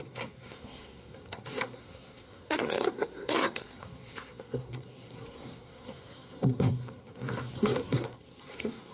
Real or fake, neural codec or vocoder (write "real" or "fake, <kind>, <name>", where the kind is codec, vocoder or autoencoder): fake, codec, SNAC